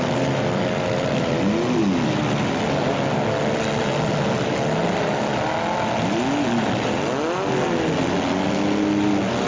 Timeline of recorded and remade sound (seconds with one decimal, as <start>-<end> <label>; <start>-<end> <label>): 0.0-9.5 recorded